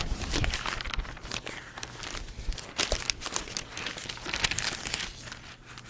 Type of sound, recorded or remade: recorded